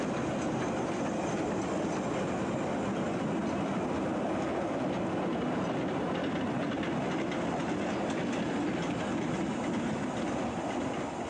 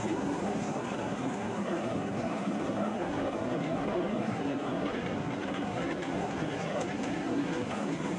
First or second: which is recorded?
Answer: first